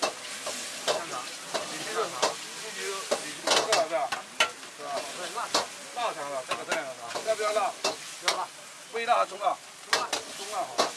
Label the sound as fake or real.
real